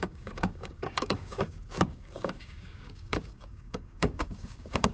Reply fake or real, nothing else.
fake